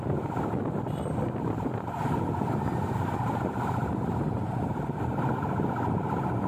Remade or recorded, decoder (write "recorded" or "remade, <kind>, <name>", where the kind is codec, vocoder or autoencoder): recorded